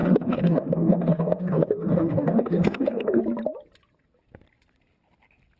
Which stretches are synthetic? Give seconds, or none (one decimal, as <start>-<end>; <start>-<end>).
0.0-3.2